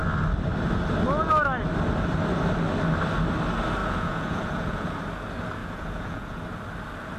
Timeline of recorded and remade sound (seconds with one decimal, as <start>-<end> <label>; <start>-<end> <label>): 0.0-3.8 recorded; 3.8-5.0 remade; 5.0-5.6 recorded; 5.6-6.4 remade; 6.4-7.2 recorded